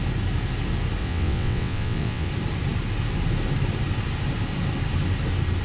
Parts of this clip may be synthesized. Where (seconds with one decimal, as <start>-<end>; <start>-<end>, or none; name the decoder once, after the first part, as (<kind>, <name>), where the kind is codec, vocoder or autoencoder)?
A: 1.0-2.3 (vocoder, WaveNeXt)